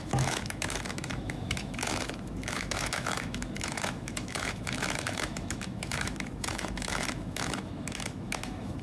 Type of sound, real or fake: fake